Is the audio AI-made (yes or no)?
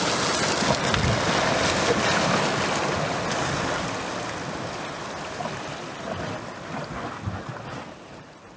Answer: no